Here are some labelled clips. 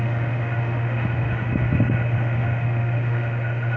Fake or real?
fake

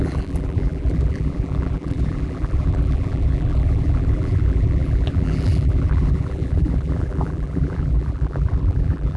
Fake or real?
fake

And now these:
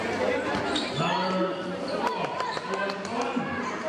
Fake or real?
real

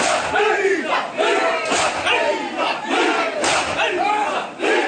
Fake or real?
real